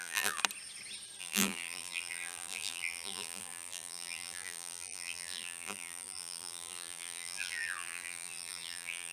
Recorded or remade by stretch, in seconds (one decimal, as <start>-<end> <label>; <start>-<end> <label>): 0.0-0.4 remade; 0.4-1.2 recorded; 1.2-9.1 remade